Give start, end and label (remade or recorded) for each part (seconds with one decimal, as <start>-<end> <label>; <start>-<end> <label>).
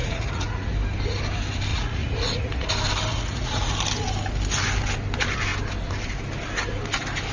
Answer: 0.0-0.7 remade; 0.7-1.7 recorded; 1.7-2.7 remade; 2.7-3.1 recorded; 3.1-3.7 remade; 3.7-7.3 recorded